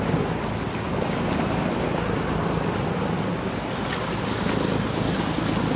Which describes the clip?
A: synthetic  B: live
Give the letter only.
B